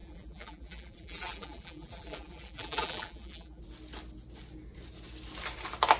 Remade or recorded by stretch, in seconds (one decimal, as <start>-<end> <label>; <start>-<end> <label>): 0.0-3.6 remade; 3.6-6.0 recorded